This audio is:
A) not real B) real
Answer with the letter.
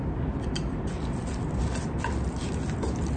B